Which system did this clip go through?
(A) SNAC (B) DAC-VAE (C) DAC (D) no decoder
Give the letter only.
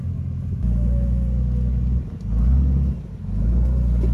D